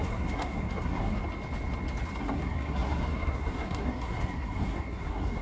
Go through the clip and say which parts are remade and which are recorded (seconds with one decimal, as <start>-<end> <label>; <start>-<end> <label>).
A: 0.0-1.2 remade; 1.2-2.2 recorded; 2.2-5.4 remade